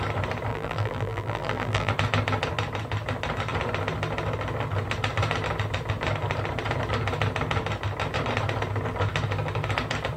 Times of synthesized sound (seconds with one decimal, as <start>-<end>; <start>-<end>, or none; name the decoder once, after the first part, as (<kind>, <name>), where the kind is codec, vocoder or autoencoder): 0.5-1.9 (vocoder, BigVGAN v2)